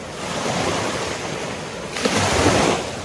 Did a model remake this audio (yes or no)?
no